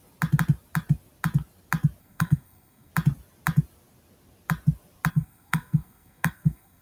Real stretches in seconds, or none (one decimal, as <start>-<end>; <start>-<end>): 0.0-2.0; 2.9-5.1